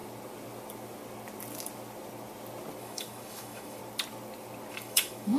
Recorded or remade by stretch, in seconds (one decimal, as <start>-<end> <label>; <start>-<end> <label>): 0.0-2.8 recorded; 2.8-3.8 remade; 3.8-4.7 recorded; 4.7-5.4 remade